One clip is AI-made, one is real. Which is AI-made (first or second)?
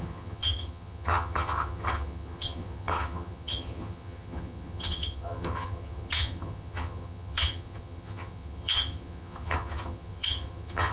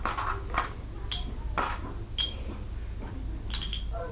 first